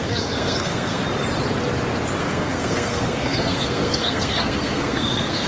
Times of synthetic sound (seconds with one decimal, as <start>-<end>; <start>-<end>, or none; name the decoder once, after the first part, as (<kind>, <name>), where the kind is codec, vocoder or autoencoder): 0.0-1.0 (codec, SNAC); 2.2-5.5